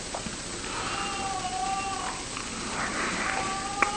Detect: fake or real real